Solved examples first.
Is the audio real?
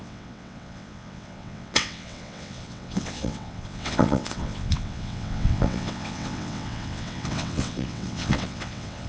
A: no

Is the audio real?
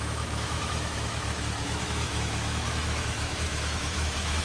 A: no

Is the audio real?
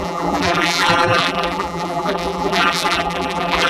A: no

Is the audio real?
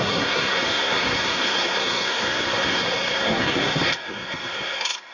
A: no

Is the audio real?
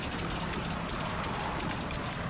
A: yes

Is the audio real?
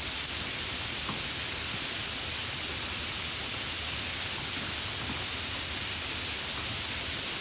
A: yes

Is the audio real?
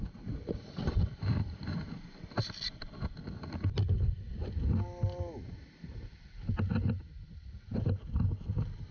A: yes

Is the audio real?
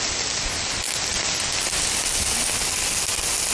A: yes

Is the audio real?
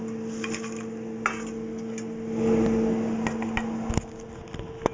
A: yes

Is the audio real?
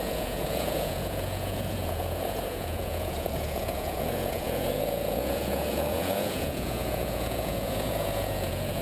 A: no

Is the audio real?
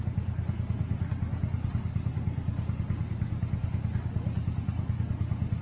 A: yes